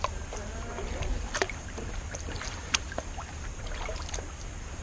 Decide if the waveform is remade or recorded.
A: remade